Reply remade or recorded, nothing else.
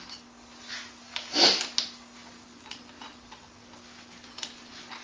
recorded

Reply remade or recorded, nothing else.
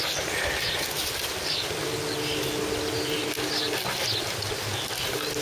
recorded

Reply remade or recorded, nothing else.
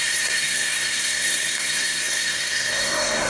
remade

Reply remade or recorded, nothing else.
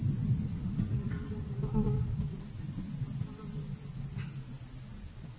recorded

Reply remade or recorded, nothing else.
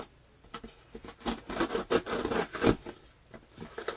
recorded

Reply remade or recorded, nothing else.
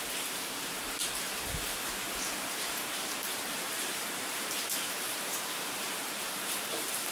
remade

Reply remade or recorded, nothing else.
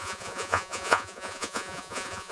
remade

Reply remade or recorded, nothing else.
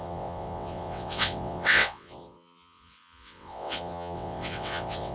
remade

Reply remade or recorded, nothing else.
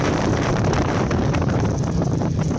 remade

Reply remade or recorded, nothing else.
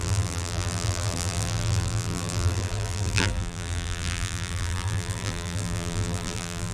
remade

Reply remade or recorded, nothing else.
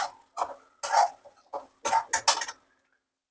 recorded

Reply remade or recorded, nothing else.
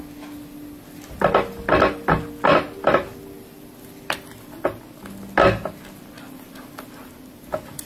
recorded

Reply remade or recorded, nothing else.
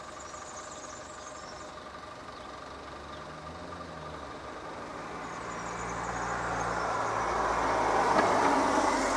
recorded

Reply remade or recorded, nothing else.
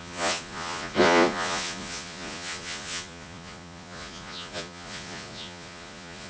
remade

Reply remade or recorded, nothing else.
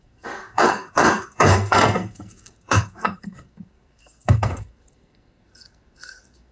remade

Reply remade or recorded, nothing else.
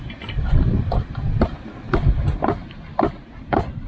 recorded